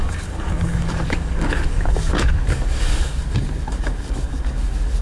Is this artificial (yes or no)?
yes